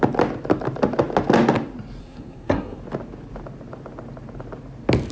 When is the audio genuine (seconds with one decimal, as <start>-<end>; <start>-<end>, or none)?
0.0-2.0; 2.8-5.1